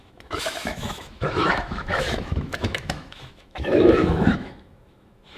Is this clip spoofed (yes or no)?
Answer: yes